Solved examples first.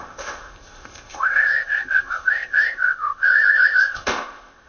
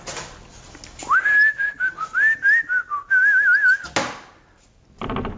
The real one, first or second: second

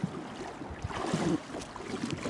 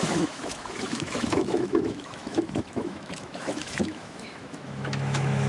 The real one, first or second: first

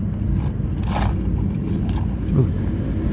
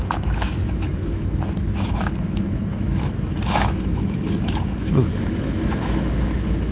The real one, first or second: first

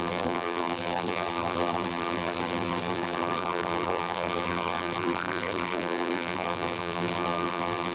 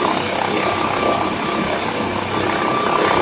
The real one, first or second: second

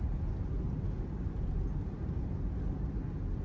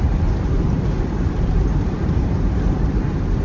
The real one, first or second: first